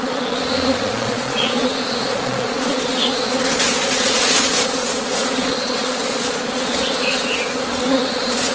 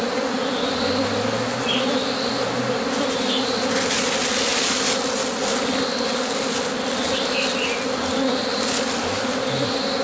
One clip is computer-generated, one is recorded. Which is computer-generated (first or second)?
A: first